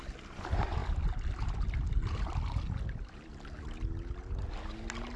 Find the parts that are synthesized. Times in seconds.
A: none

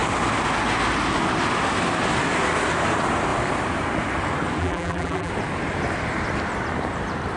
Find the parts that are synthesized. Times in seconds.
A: 4.6-5.3 (vocoder, BigVGAN v2)

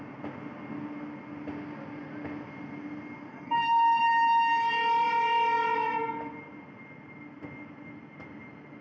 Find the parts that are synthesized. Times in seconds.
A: 3.3-4.0 (codec, DAC)

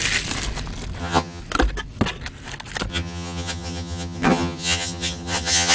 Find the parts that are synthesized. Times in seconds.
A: 1.0-1.4 (vocoder, HiFi-GAN); 2.9-5.7

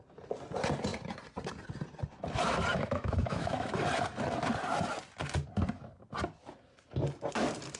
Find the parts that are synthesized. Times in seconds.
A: 2.7-3.7 (autoencoder, DAC-VAE)